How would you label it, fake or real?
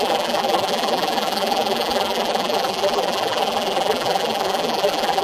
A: fake